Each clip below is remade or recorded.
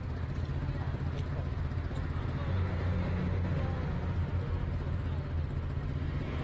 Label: recorded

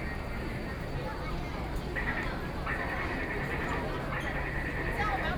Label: recorded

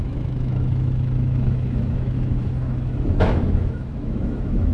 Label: remade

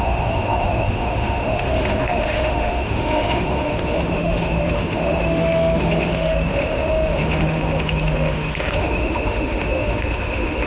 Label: remade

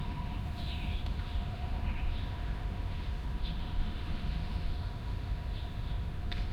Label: remade